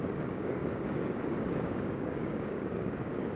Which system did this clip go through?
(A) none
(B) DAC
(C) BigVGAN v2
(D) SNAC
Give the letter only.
B